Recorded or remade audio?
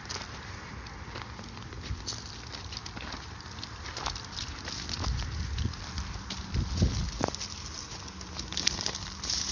recorded